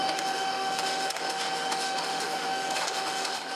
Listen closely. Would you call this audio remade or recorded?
remade